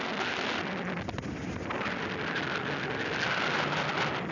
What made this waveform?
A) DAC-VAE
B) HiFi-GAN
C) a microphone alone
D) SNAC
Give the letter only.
C